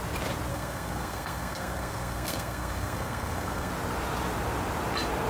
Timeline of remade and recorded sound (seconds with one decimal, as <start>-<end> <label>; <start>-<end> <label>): 0.0-0.5 recorded; 0.5-3.7 remade; 3.7-5.3 recorded